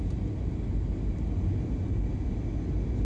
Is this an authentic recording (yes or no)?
yes